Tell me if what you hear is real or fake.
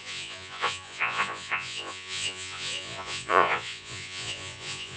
fake